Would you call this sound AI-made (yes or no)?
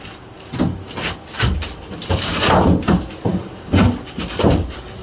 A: no